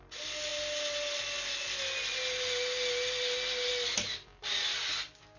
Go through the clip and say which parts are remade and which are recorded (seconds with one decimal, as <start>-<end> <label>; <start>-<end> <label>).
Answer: 0.0-5.4 recorded